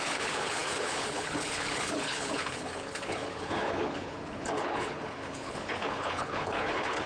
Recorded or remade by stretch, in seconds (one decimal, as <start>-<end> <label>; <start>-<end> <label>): 0.0-7.1 remade